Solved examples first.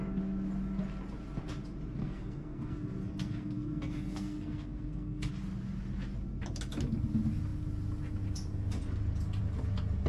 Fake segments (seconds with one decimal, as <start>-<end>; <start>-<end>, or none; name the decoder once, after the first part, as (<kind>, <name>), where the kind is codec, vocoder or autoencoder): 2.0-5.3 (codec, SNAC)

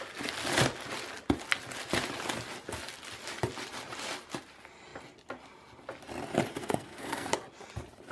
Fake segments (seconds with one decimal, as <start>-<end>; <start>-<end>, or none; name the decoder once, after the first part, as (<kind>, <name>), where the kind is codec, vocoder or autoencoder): 6.6-7.3 (codec, SNAC)

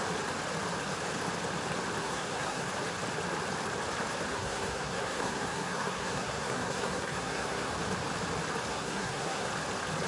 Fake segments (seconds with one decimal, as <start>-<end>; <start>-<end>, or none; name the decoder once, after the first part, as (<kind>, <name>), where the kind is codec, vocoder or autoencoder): 2.0-2.7 (codec, SNAC); 4.3-7.7; 8.7-9.5